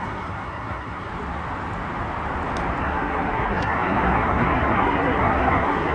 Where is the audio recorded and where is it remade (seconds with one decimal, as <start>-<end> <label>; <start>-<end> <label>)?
0.0-1.1 remade; 1.1-2.8 recorded; 2.8-5.9 remade